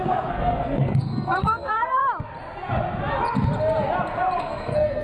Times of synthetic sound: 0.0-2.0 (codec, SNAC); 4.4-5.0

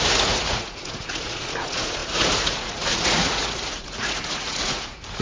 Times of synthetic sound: 0.0-5.2 (vocoder, Vocos)

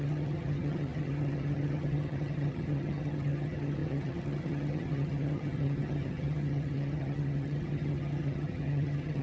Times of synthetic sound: 0.0-9.2 (vocoder, HiFi-GAN)